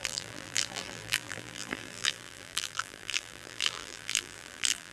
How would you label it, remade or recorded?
remade